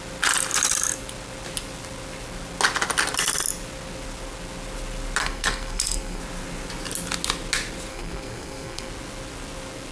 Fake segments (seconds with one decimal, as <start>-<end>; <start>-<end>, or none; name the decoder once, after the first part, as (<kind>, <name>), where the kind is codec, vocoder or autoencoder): 5.2-6.2 (codec, SNAC); 7.9-8.9